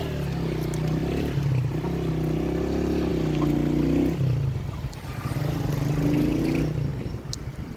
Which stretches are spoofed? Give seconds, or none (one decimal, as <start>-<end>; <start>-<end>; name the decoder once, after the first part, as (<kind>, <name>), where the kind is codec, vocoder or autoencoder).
1.0-2.1 (vocoder, BigVGAN v2)